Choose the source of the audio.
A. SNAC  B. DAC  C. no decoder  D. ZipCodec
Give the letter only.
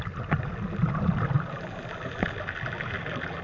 C